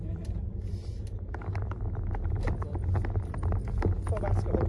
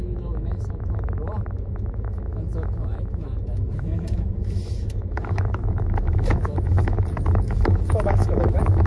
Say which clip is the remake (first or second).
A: second